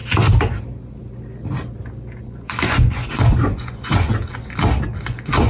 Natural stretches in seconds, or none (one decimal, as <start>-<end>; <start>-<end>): 0.0-2.2; 4.1-5.0